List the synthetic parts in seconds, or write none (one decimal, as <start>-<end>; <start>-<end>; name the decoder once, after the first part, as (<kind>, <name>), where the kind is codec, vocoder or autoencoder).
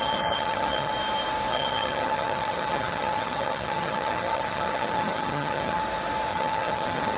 0.0-0.9 (vocoder, HiFi-GAN); 1.5-5.8; 6.3-7.2